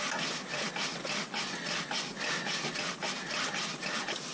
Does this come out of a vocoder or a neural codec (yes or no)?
no